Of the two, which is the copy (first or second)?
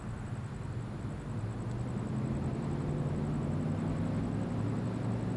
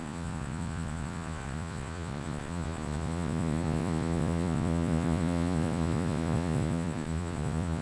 second